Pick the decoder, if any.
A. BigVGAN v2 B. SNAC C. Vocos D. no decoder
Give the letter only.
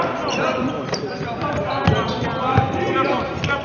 D